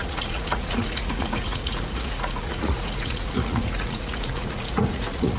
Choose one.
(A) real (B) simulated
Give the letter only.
B